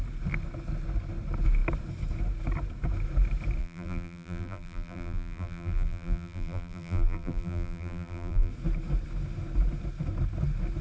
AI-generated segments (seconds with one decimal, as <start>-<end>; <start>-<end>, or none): 3.6-8.5